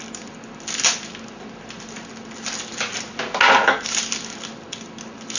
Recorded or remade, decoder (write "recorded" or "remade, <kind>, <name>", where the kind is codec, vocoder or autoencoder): recorded